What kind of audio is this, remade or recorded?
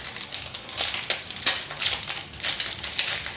recorded